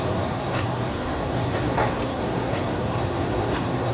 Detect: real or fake fake